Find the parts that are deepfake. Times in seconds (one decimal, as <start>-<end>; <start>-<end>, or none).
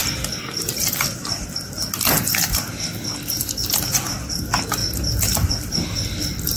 none